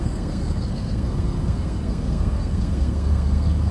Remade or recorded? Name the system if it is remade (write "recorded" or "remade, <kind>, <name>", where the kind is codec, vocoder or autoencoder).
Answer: remade, codec, SNAC